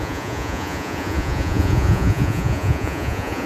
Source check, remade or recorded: remade